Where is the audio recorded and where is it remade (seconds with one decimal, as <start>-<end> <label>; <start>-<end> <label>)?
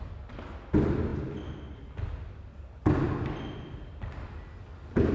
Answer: 0.0-5.1 recorded